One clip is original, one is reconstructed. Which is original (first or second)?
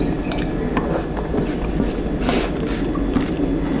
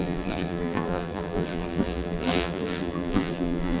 first